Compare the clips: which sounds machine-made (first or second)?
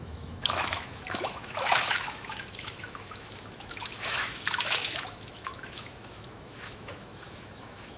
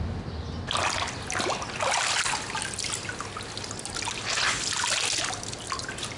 first